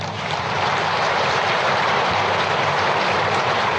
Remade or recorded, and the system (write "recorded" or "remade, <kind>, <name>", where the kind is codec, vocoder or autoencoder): remade, vocoder, BigVGAN v2